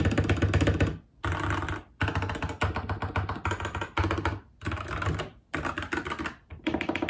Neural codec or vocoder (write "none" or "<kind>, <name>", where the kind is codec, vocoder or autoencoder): none